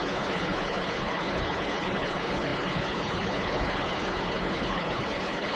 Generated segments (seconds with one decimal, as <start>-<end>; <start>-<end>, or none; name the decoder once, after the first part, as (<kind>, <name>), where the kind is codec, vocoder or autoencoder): 0.0-5.6 (codec, HILCodec)